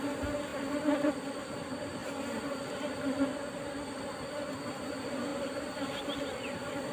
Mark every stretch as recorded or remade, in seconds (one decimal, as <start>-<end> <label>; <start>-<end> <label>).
0.0-6.9 recorded